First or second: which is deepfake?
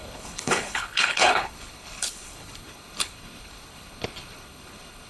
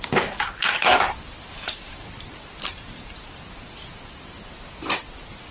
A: first